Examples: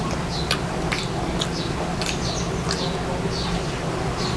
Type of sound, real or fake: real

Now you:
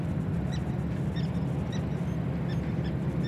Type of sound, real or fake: real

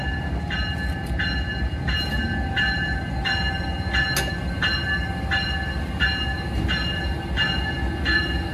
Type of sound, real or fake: real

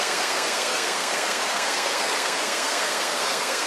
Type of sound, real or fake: fake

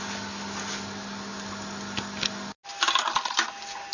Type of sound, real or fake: real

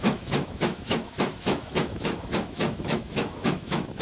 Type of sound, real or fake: fake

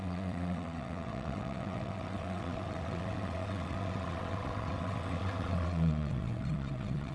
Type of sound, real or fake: fake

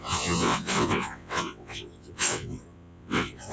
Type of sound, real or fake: fake